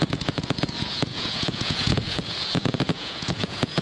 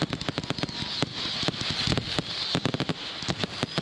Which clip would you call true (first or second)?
second